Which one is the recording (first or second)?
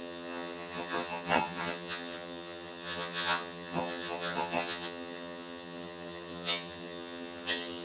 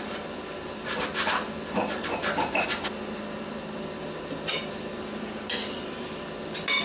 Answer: second